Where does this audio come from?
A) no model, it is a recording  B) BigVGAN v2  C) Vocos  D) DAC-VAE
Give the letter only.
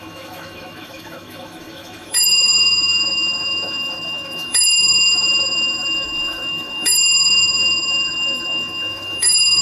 D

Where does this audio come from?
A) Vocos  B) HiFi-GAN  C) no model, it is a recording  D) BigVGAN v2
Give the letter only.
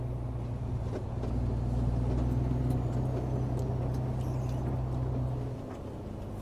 C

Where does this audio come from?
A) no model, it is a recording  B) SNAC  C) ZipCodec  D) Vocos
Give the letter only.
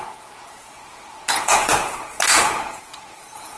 D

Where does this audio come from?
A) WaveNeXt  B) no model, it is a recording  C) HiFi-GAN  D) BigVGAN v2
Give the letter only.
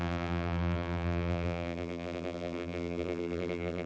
D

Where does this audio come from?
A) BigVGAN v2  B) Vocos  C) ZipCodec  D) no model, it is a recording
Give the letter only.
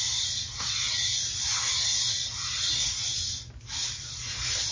D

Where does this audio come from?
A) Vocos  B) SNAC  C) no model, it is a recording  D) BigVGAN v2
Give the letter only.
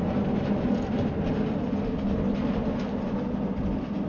C